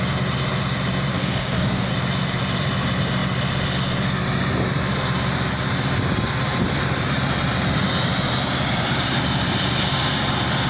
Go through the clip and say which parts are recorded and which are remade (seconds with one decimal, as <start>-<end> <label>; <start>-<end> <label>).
0.0-1.1 recorded; 1.1-1.9 remade; 1.9-10.7 recorded